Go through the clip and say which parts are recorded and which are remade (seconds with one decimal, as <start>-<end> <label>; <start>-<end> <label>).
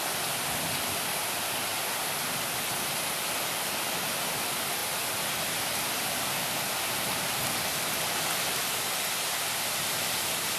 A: 0.0-10.6 recorded